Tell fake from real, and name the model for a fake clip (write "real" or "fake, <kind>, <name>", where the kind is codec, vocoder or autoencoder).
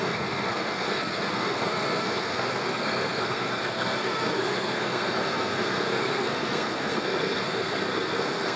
fake, codec, SNAC